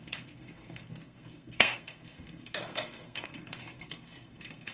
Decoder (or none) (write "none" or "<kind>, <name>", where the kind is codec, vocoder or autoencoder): codec, SNAC